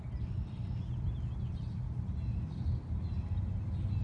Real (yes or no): yes